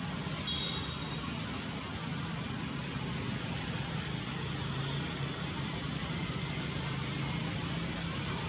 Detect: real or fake real